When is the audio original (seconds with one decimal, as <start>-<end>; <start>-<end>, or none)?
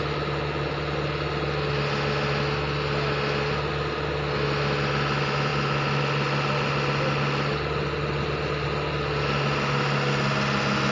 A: 0.0-10.9